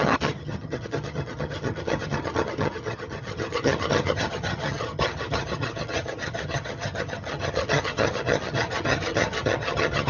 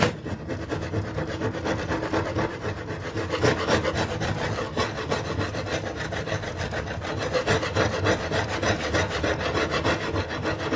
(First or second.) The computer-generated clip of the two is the first